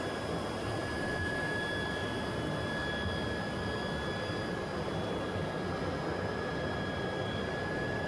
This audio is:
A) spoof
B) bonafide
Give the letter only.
B